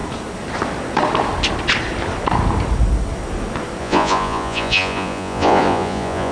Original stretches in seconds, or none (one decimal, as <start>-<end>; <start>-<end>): 0.0-3.8